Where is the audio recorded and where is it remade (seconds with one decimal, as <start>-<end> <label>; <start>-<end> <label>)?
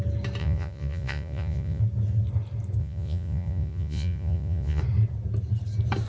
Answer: 0.0-0.4 recorded; 0.4-1.8 remade; 1.8-2.8 recorded; 2.8-4.8 remade; 4.8-6.1 recorded